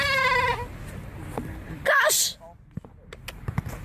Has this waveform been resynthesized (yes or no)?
no